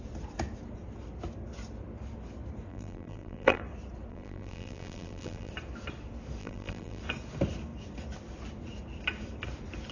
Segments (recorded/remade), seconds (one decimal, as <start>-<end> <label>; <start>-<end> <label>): 0.0-2.7 recorded; 2.7-3.6 remade; 3.6-4.1 recorded; 4.1-5.5 remade; 5.5-6.4 recorded; 6.4-7.0 remade; 7.0-9.9 recorded